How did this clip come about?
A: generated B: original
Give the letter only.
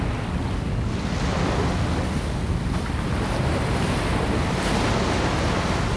B